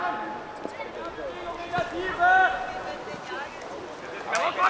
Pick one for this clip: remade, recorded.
recorded